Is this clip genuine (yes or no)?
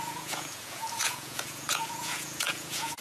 no